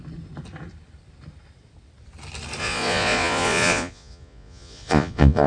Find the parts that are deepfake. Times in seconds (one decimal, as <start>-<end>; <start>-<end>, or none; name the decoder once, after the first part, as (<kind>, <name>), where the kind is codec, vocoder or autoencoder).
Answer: 2.6-5.5 (vocoder, Vocos)